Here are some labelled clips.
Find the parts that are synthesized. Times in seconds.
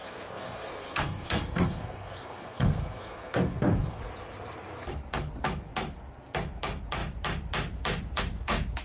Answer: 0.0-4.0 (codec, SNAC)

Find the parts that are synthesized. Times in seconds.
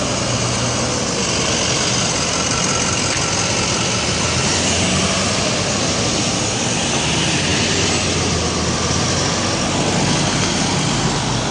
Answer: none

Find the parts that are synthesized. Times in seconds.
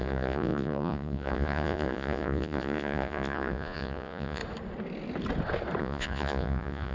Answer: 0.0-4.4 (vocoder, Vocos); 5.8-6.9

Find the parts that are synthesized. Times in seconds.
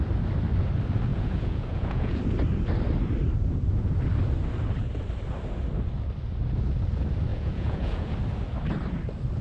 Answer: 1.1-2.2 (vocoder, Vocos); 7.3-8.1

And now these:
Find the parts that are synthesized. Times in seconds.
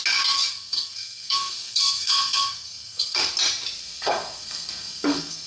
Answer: 0.5-3.2 (codec, SNAC); 3.8-5.5